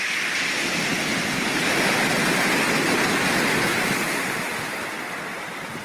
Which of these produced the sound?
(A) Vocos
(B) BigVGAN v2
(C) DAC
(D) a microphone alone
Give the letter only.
D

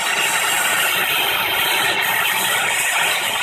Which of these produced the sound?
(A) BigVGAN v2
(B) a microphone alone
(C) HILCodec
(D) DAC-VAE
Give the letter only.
A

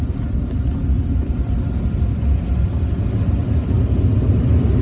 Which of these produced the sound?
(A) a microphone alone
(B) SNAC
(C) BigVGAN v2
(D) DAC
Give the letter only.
A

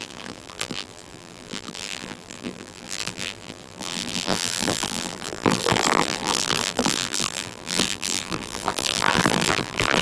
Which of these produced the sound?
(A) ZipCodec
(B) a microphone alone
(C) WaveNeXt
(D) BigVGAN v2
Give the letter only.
D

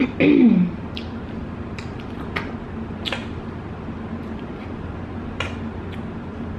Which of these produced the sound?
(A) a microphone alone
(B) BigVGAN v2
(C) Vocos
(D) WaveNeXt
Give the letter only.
A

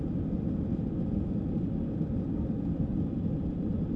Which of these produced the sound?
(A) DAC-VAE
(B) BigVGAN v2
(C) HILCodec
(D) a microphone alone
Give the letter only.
B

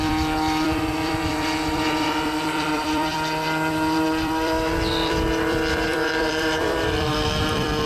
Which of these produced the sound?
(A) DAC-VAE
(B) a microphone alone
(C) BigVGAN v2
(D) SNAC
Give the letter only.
C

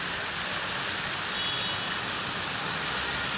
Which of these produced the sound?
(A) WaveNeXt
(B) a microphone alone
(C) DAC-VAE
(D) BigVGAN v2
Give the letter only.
B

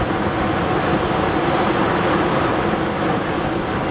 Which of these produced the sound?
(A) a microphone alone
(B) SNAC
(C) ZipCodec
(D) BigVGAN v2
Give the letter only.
A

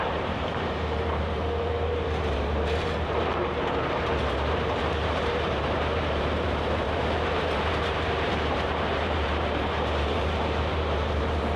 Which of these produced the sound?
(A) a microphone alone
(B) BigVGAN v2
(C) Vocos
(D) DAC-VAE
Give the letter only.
B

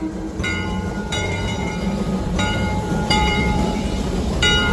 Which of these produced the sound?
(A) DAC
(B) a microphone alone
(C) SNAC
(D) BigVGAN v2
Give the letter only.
D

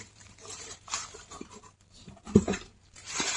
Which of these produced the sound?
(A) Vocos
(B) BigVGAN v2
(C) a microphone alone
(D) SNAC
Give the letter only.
B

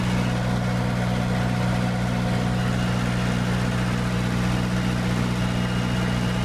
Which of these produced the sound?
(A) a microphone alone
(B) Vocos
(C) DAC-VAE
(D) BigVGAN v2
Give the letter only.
A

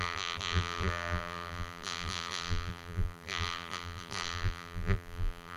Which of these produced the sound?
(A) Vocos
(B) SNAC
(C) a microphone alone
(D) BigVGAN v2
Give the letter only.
D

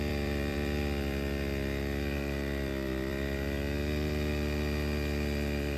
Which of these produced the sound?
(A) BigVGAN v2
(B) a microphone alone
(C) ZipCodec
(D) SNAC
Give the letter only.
A